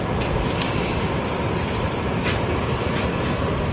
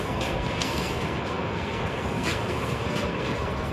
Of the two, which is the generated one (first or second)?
second